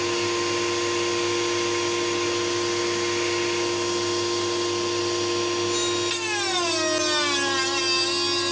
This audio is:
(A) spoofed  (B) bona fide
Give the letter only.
B